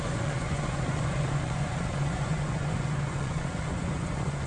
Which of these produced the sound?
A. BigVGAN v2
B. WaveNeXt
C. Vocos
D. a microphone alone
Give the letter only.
C